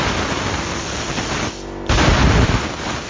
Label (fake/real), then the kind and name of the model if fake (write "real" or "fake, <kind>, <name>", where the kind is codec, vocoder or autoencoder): fake, vocoder, BigVGAN v2